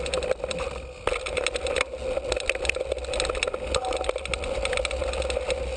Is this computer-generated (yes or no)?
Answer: no